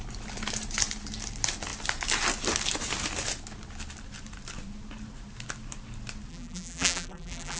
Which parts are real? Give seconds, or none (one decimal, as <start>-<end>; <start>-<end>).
0.0-6.3